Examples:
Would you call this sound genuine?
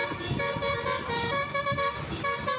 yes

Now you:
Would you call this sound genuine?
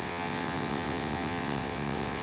no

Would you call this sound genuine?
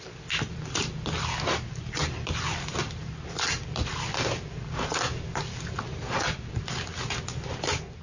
yes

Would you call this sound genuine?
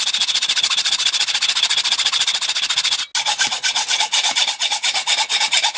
yes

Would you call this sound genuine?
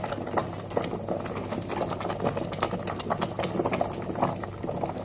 yes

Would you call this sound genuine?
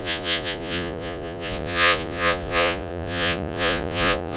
no